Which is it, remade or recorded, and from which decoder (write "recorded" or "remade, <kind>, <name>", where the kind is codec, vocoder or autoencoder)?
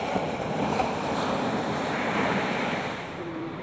remade, vocoder, BigVGAN v2